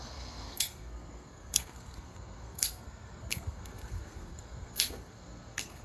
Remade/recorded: remade